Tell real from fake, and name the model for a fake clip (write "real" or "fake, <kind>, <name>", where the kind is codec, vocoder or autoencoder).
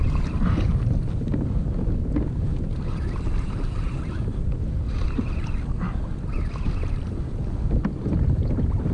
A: real